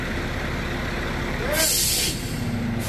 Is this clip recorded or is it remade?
recorded